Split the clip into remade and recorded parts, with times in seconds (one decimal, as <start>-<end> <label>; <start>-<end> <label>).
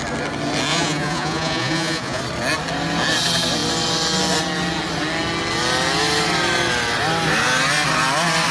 0.0-0.7 recorded; 0.7-2.2 remade; 2.2-8.5 recorded